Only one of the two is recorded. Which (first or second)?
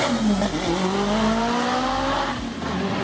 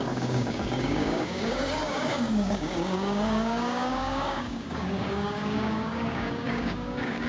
first